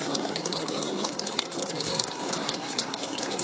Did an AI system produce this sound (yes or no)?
yes